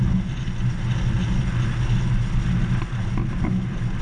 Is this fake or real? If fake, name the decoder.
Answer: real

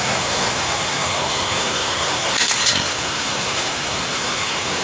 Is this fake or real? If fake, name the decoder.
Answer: fake, codec, SNAC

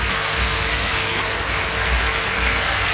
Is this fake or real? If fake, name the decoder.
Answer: fake, codec, SNAC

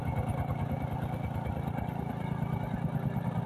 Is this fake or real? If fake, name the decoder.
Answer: real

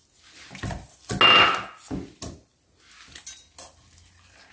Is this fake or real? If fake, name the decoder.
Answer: real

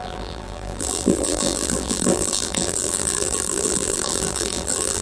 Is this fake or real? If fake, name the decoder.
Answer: fake, vocoder, BigVGAN v2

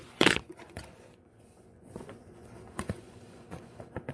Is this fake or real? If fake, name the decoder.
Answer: fake, vocoder, Vocos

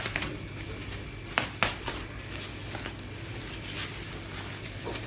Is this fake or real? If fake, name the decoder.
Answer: real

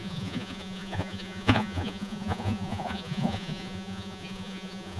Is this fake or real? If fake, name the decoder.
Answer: fake, vocoder, Vocos